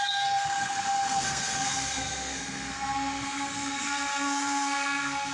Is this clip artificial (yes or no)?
yes